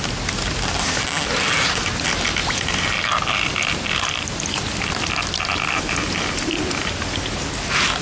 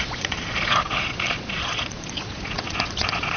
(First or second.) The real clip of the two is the first